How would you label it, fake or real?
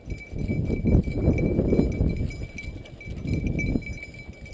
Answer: real